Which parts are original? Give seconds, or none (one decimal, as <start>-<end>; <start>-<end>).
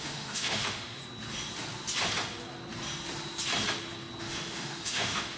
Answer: 1.0-4.2